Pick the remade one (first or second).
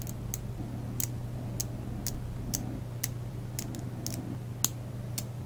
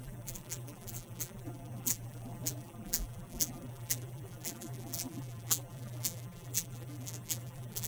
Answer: second